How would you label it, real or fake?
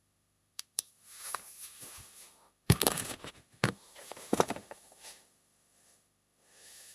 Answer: fake